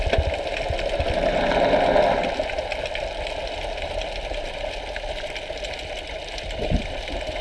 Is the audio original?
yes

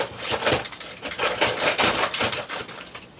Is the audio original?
yes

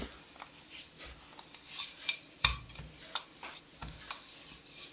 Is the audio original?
yes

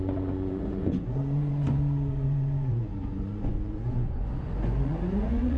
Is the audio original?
no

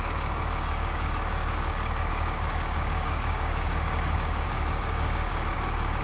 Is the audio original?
no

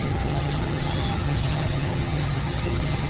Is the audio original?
no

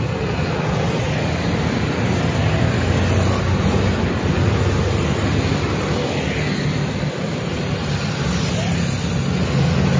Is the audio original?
yes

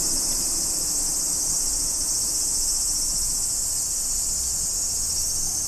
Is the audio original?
yes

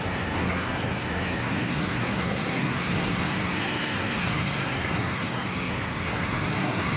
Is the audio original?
no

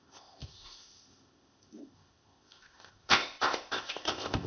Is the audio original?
no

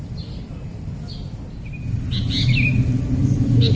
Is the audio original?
yes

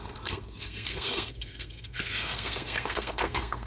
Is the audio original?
no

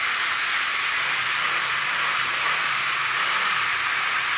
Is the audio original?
yes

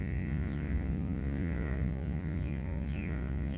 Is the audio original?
no